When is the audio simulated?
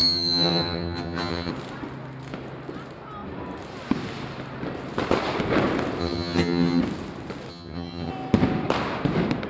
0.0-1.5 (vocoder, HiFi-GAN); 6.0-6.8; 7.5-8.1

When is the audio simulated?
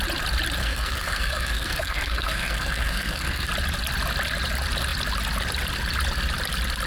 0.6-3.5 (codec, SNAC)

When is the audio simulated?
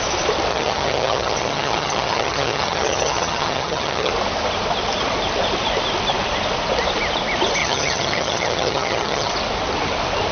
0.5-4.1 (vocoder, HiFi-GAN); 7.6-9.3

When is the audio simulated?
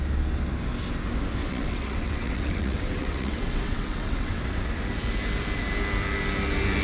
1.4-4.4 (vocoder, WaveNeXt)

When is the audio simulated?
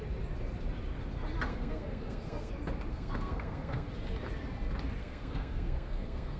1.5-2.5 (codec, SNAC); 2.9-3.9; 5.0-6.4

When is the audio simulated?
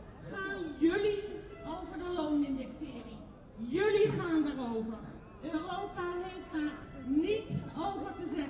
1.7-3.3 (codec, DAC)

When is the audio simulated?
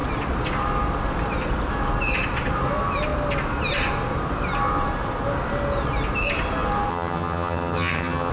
6.9-8.3 (vocoder, HiFi-GAN)